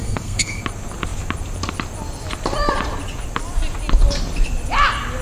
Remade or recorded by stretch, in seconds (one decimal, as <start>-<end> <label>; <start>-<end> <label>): 0.0-0.6 remade; 0.6-5.2 recorded